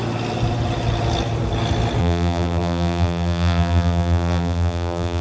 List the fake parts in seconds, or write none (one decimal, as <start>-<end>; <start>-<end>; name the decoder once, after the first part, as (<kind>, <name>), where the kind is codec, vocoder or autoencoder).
2.0-5.2 (vocoder, BigVGAN v2)